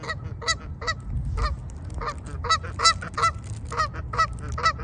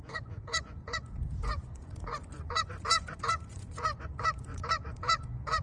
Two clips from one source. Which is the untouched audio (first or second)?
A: first